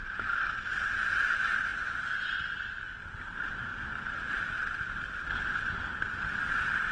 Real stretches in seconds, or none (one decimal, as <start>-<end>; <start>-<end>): 0.0-6.9